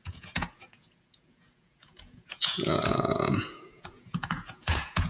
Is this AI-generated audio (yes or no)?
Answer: yes